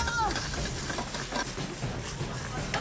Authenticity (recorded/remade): recorded